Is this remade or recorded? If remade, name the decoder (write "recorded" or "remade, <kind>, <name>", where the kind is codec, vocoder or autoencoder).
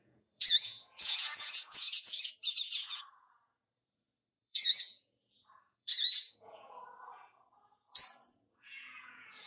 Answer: remade, vocoder, Vocos